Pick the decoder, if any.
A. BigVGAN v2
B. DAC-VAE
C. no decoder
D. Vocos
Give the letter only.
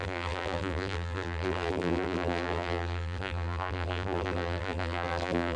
A